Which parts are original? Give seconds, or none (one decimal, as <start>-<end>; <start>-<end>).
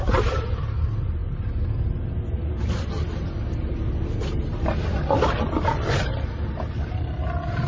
0.0-7.7